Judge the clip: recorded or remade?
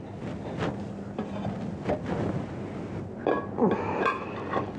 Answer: recorded